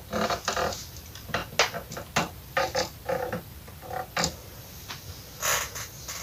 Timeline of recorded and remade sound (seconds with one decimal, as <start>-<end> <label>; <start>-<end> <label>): 0.0-6.2 recorded